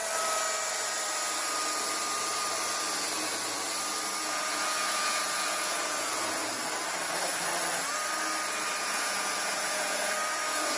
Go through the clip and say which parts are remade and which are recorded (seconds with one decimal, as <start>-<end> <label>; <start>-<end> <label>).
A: 0.0-4.2 recorded; 4.2-6.5 remade; 6.5-8.8 recorded; 8.8-10.8 remade